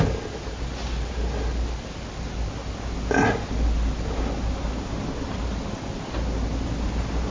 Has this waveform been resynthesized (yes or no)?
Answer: no